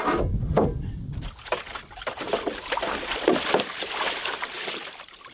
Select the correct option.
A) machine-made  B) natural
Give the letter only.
B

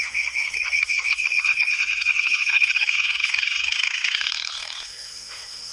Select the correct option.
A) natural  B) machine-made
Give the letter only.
B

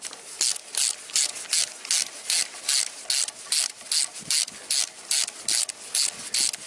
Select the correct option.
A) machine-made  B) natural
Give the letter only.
B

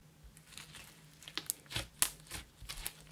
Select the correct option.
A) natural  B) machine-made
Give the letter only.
A